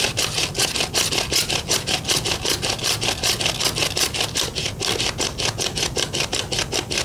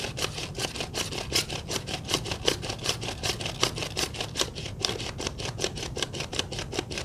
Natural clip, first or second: first